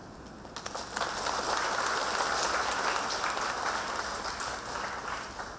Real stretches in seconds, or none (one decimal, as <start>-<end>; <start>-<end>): 0.0-5.6